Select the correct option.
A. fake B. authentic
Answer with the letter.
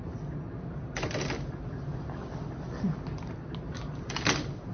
B